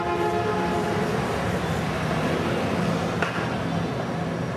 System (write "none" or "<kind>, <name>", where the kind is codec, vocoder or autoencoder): none